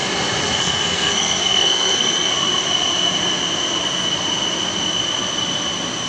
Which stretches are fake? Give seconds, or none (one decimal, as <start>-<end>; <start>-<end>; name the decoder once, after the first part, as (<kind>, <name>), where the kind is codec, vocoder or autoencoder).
0.6-2.3 (codec, SNAC)